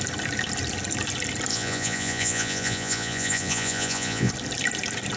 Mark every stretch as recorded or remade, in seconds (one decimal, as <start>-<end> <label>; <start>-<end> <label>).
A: 0.0-1.5 recorded; 1.5-4.3 remade; 4.3-5.2 recorded